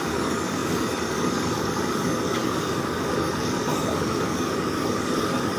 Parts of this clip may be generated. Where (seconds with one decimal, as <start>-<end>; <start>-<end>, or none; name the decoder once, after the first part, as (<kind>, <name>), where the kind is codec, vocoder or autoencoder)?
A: 0.0-5.6 (codec, DAC)